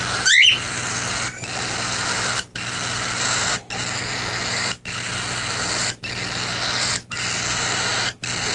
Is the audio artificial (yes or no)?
no